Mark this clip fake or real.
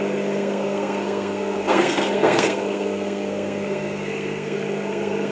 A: fake